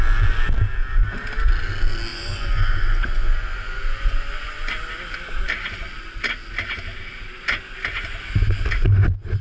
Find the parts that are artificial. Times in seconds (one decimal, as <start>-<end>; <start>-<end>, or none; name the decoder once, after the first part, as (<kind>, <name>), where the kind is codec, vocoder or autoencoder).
2.1-4.7 (vocoder, Vocos)